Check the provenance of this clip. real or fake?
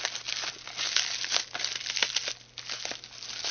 real